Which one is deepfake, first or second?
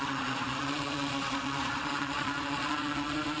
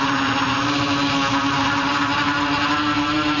first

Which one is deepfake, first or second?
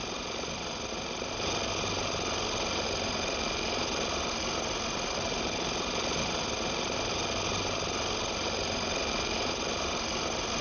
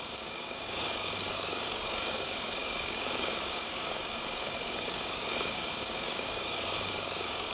second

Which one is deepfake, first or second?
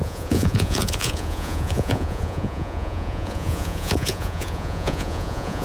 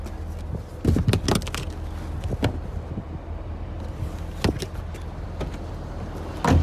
first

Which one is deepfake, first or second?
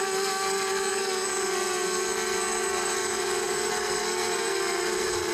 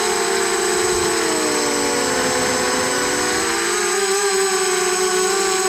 first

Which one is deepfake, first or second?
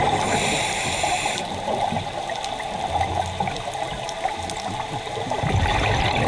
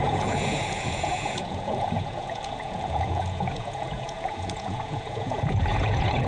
second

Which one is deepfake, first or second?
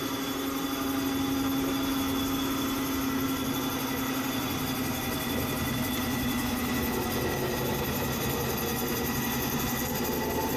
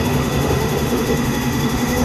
second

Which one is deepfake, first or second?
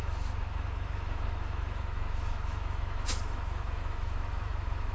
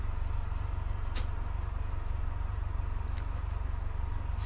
first